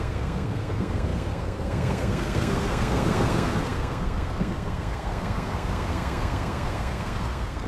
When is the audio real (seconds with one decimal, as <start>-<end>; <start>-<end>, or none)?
none